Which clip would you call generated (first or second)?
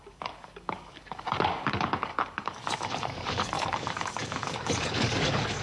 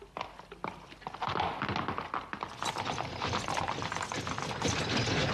first